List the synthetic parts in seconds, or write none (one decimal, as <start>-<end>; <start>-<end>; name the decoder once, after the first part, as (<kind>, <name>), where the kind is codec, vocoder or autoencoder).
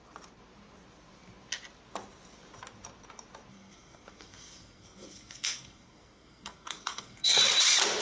3.5-7.4 (codec, SNAC)